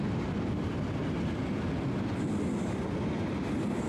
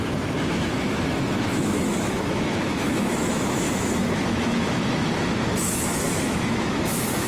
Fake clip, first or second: second